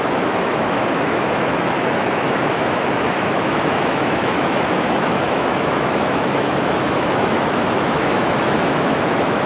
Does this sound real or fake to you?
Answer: fake